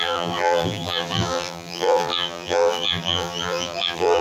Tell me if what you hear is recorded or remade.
remade